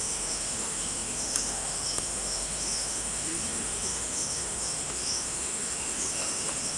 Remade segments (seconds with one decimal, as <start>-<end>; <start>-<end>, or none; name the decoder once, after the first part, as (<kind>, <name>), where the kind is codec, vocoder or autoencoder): 0.0-6.8 (autoencoder, DAC-VAE)